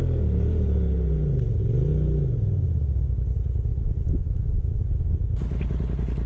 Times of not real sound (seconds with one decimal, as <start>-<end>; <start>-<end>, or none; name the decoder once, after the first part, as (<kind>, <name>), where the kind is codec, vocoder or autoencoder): 3.7-4.7 (autoencoder, DAC-VAE)